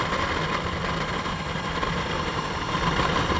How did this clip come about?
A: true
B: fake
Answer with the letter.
A